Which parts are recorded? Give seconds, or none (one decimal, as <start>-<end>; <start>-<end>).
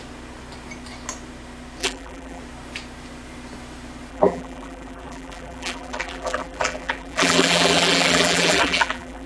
0.0-1.8; 2.4-4.1